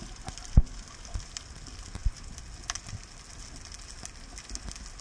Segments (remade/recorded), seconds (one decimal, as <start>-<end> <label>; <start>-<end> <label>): 0.0-5.0 recorded